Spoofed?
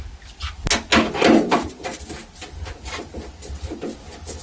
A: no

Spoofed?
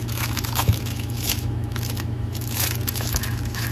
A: yes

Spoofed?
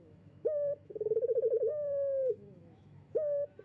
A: yes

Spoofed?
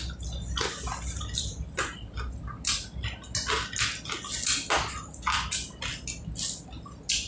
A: no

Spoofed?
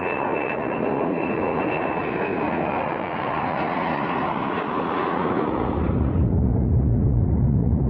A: yes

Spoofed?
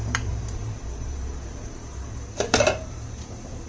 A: yes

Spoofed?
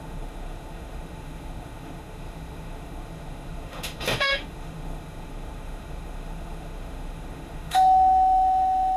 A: yes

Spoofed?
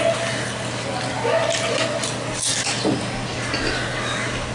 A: no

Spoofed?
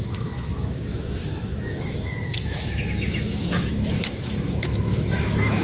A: yes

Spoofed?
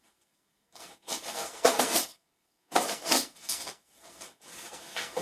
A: yes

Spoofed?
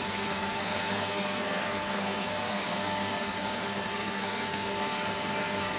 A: yes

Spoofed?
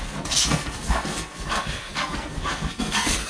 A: yes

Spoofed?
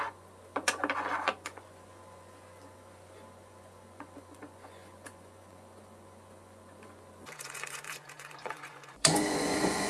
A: yes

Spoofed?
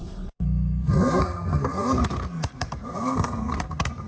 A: yes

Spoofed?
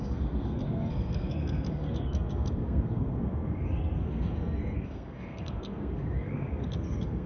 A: yes